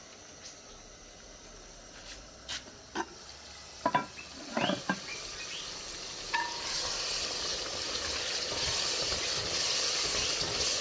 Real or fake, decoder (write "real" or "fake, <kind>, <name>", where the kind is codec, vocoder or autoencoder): real